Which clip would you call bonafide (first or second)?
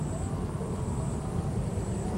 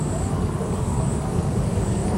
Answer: first